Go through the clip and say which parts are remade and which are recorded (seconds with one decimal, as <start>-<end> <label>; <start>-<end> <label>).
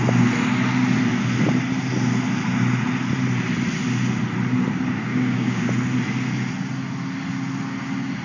0.0-5.1 recorded; 5.1-5.7 remade; 5.7-8.2 recorded